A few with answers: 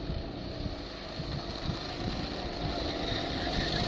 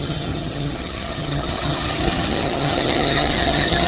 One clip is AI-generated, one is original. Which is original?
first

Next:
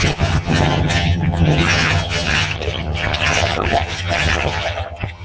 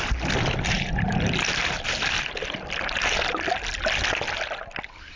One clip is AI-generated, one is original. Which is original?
second